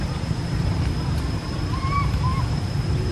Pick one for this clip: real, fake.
fake